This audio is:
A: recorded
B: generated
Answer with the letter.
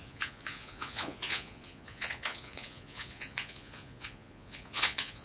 B